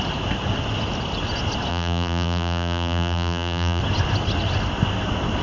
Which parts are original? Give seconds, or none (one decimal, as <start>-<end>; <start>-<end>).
0.0-1.7; 3.8-5.4